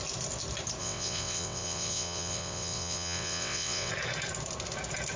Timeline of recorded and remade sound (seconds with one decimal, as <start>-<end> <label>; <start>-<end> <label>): 0.0-0.8 recorded; 0.8-3.9 remade; 3.9-5.2 recorded